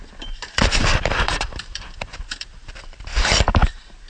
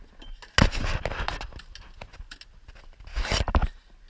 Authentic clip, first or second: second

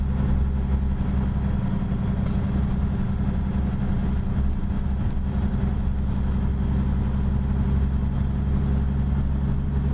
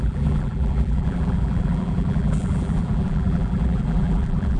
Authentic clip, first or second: first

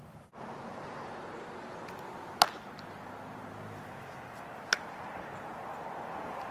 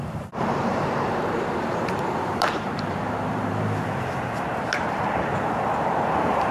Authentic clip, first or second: first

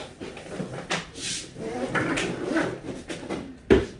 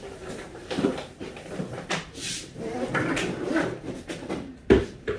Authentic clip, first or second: first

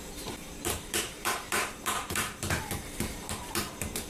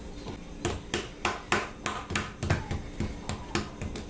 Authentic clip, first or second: second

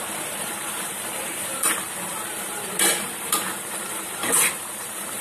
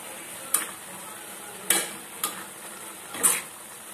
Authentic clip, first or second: second